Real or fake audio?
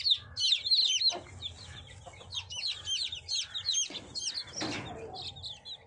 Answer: real